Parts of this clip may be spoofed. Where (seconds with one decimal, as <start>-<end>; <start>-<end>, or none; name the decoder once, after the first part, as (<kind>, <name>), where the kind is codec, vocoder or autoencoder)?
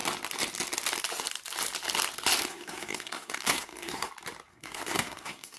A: 2.5-4.1 (codec, SNAC); 4.5-5.6